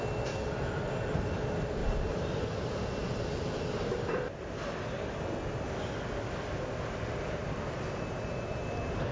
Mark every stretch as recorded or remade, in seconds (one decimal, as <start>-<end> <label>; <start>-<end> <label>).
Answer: 0.0-1.8 recorded; 1.8-2.5 remade; 2.5-9.1 recorded